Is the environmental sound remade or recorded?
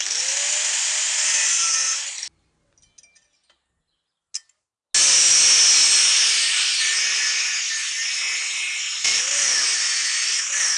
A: recorded